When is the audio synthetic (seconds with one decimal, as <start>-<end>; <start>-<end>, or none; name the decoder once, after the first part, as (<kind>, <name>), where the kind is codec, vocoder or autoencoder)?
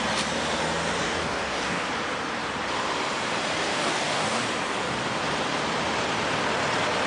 1.0-1.9 (codec, DAC); 3.7-4.4